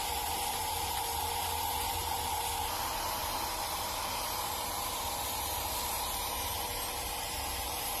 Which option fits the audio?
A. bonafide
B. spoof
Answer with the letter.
B